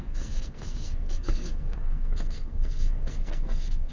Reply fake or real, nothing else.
fake